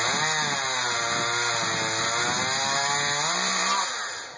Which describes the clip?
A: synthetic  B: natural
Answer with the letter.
B